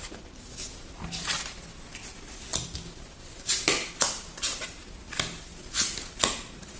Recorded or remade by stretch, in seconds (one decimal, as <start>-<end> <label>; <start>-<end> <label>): 0.0-6.8 recorded